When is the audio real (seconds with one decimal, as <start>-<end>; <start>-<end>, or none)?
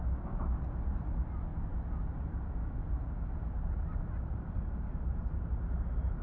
0.0-6.2